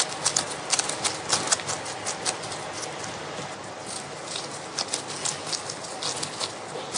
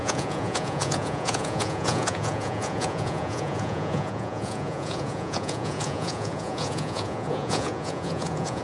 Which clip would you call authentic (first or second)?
first